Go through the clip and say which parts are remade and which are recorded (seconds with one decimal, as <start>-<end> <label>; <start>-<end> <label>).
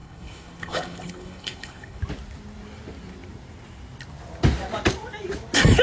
0.0-2.0 remade; 2.0-5.8 recorded